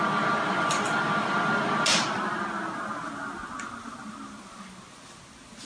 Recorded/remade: recorded